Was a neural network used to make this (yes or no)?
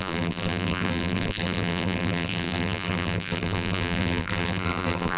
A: yes